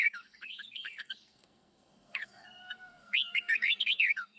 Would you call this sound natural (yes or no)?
no